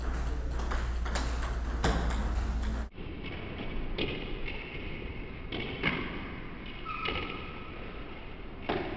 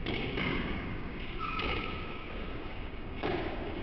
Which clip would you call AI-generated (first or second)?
second